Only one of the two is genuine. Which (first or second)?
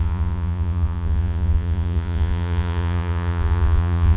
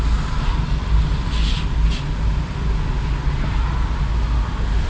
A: second